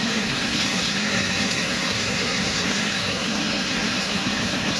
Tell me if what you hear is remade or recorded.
remade